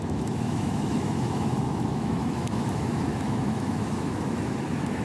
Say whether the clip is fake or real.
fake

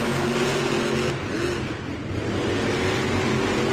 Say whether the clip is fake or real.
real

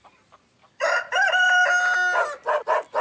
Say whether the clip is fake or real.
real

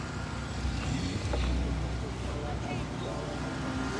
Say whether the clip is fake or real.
real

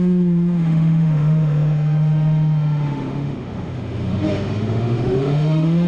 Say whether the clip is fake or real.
fake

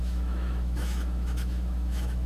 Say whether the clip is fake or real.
fake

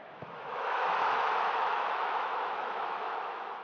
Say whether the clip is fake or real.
fake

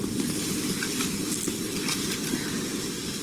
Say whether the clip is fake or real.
real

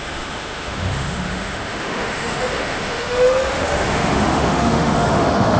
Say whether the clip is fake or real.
fake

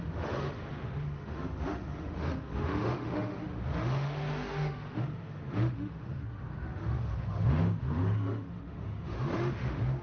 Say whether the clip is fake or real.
fake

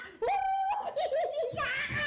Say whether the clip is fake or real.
real